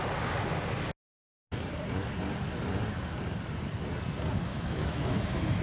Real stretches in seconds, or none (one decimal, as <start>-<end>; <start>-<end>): 0.0-4.5